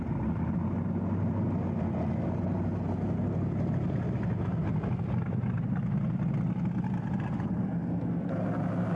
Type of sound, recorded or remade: recorded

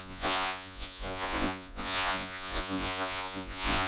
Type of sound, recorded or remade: remade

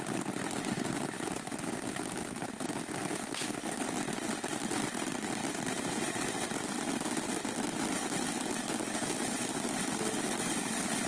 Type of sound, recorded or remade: recorded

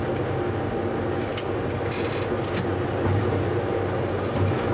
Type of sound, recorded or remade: recorded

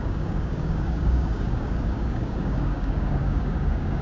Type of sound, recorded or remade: remade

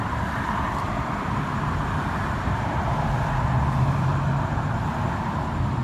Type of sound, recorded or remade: remade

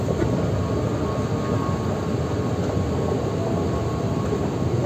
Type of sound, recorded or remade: recorded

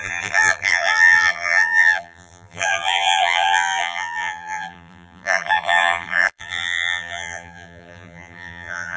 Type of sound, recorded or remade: remade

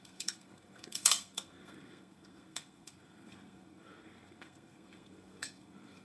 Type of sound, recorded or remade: remade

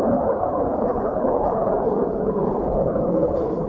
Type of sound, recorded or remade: remade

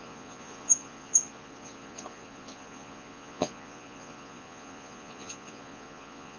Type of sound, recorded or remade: remade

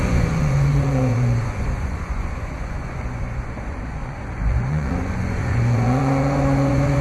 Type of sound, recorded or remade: remade